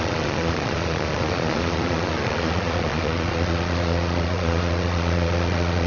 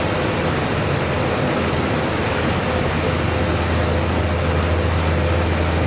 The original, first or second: second